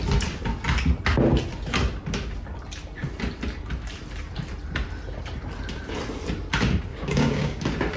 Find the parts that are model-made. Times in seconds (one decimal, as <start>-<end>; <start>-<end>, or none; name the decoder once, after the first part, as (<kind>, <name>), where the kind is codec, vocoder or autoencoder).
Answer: 6.9-7.6 (codec, DAC)